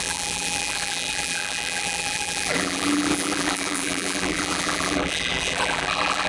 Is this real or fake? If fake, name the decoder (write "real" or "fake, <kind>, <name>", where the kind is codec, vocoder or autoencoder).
fake, vocoder, BigVGAN v2